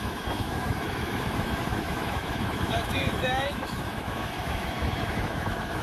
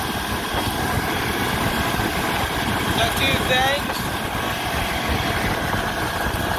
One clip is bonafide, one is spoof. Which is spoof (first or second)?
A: first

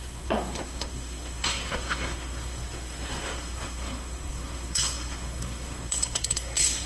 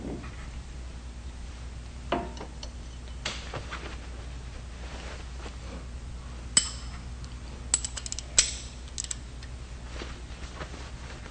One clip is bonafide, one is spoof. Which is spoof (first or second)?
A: first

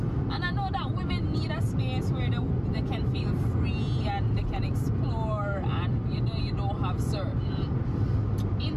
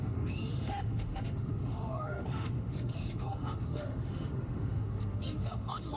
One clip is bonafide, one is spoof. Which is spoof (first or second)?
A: second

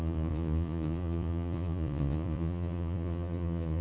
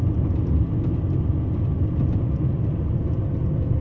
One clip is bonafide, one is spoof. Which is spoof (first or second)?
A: first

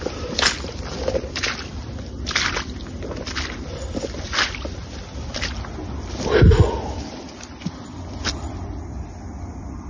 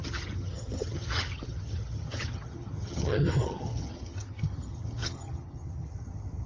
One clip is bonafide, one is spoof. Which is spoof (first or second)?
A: second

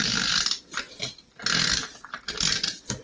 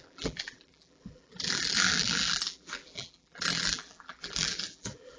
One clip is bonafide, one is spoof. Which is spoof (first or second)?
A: second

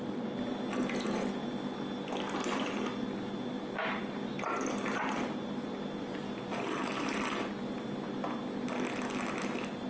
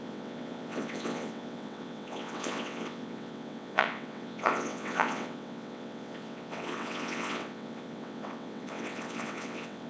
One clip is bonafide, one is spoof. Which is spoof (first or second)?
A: second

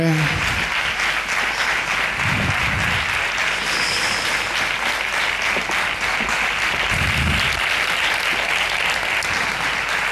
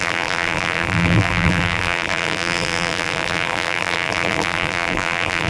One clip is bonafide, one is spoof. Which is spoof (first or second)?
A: second